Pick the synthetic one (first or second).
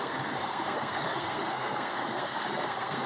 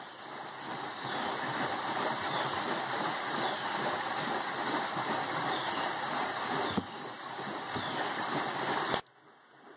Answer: first